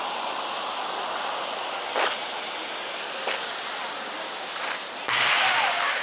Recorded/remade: recorded